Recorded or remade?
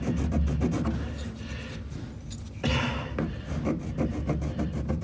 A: recorded